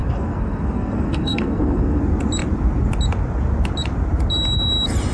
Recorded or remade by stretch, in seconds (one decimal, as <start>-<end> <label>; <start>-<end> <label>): 0.0-2.0 remade; 2.0-5.1 recorded